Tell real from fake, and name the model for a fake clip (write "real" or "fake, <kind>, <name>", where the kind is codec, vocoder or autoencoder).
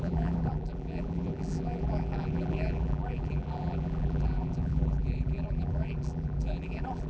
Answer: fake, vocoder, BigVGAN v2